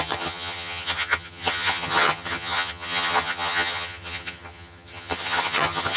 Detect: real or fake fake